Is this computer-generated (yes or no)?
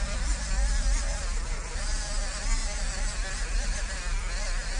no